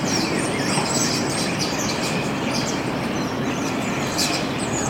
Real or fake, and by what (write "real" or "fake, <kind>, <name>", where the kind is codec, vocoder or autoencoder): fake, vocoder, BigVGAN v2